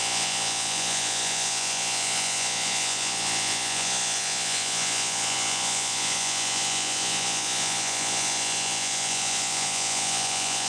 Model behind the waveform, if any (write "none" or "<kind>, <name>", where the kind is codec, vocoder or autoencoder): vocoder, Vocos